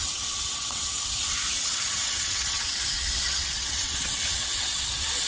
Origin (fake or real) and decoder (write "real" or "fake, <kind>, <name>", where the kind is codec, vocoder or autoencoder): fake, vocoder, WaveNeXt